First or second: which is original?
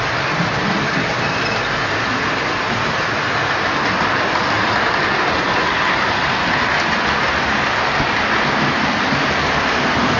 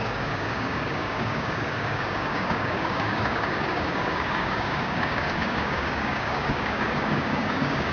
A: first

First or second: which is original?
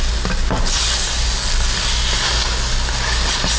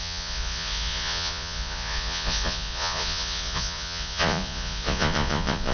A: first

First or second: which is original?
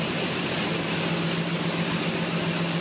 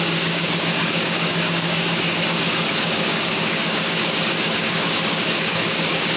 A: first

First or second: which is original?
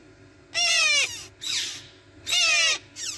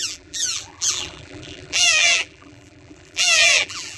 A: first